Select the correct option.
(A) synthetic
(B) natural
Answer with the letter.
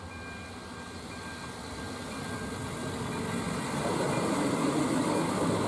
B